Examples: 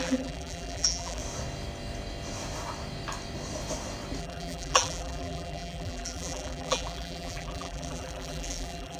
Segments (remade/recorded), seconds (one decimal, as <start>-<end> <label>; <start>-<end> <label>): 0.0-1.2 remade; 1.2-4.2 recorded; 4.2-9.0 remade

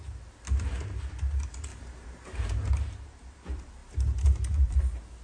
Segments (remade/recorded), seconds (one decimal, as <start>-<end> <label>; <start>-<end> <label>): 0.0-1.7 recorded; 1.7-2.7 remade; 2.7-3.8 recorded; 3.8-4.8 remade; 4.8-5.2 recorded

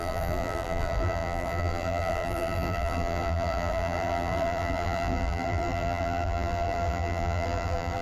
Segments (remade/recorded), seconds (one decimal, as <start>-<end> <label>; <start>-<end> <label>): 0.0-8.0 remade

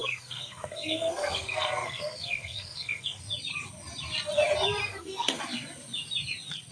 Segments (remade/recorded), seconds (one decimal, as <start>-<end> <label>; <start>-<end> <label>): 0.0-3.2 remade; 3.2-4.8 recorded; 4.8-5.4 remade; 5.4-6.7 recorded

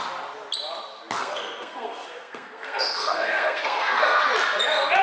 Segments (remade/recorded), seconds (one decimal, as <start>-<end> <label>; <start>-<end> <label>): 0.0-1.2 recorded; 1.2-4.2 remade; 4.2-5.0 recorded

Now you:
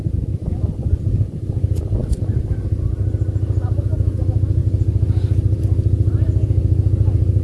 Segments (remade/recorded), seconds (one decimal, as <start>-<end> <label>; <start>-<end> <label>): 0.0-7.4 recorded

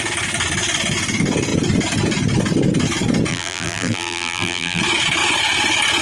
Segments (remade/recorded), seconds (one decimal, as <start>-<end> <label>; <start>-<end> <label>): 0.0-3.3 recorded; 3.3-4.8 remade; 4.8-6.0 recorded

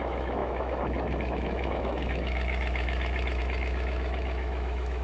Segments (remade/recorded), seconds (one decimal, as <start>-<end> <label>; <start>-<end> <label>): 0.0-5.0 remade